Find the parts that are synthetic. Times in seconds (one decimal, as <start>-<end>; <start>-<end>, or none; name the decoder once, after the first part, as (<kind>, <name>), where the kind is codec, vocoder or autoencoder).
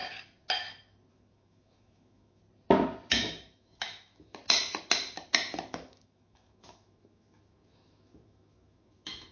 1.1-2.4 (autoencoder, DAC-VAE); 3.1-4.4; 5.7-9.3